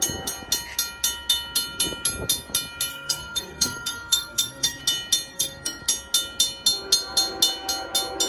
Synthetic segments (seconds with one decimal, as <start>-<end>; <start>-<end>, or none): 2.9-4.8; 5.3-5.8